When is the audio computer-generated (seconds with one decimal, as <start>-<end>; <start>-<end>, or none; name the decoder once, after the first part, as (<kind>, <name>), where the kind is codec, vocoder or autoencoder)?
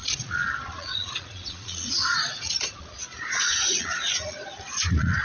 0.0-5.2 (vocoder, Vocos)